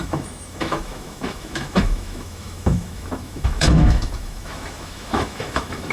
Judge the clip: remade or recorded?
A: remade